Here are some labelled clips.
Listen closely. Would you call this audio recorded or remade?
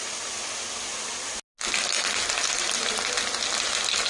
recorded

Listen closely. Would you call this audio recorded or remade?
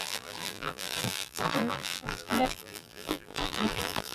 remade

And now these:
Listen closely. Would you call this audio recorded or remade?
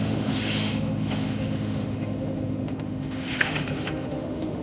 remade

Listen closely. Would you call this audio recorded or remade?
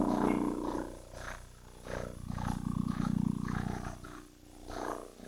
recorded